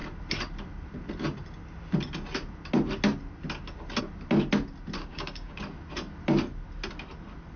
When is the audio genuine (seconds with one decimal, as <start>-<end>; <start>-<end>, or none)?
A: 0.0-5.0; 5.6-7.6